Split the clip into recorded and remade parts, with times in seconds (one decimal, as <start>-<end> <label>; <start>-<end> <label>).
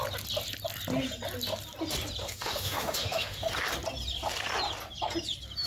0.0-2.2 recorded; 2.2-3.5 remade; 3.5-5.7 recorded